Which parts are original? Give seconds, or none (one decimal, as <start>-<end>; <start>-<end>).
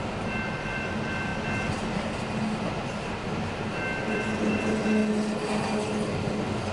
0.0-6.7